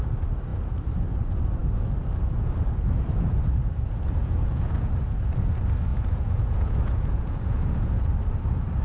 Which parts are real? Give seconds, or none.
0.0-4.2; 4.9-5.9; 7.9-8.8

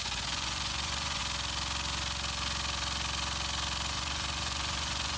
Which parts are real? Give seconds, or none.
1.2-3.9

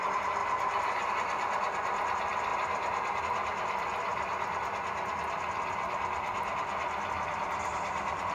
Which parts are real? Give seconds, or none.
0.0-8.3

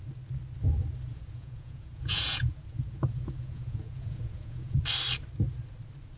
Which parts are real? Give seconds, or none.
0.0-1.1; 4.8-6.2

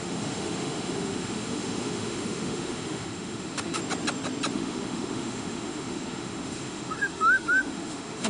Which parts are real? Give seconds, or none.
3.8-4.5

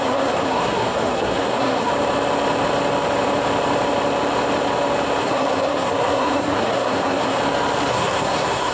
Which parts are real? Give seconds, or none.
1.9-5.2; 7.4-7.9